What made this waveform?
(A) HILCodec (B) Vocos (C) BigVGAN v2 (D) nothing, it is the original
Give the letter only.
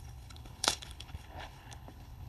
A